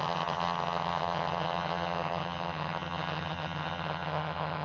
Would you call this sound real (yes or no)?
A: no